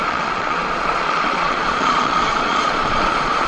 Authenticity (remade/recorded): remade